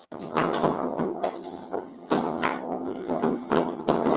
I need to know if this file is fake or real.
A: fake